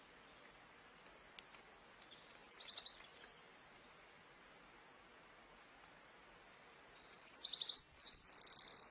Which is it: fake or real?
real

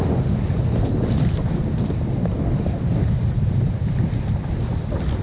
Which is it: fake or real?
real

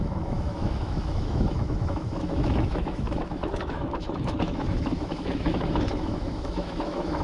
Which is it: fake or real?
fake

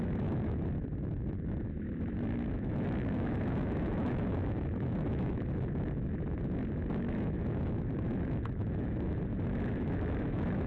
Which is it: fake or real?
fake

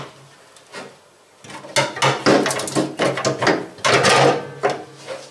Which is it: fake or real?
real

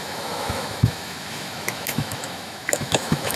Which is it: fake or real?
fake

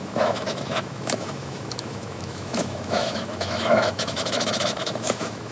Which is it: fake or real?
fake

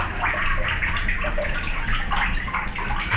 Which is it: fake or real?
real